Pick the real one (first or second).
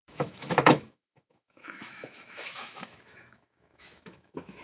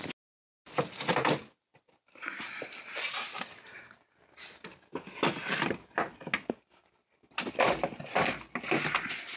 second